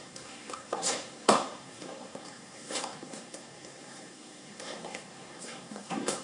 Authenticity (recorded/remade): remade